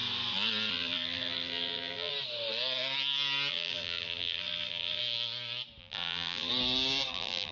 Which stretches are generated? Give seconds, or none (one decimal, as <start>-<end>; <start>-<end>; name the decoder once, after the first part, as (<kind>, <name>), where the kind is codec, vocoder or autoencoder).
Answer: 0.7-2.1 (vocoder, BigVGAN v2); 3.5-5.0; 5.8-6.5; 7.1-7.5